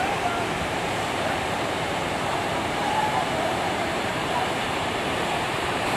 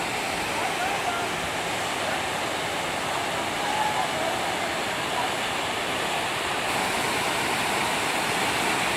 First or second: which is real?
second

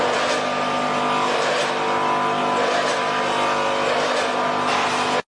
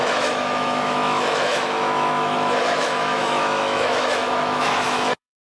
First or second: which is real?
first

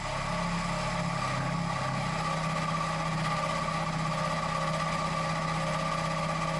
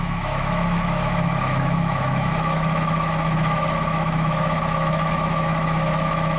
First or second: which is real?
first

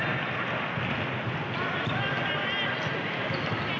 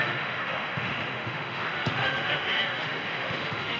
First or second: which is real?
first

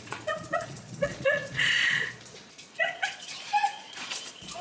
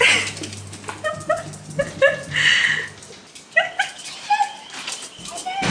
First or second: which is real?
second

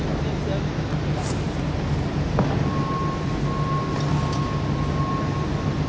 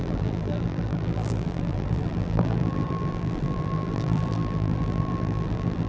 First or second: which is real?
first